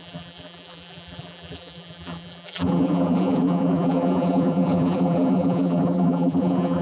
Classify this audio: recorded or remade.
remade